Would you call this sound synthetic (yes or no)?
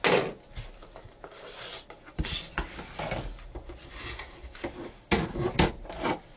no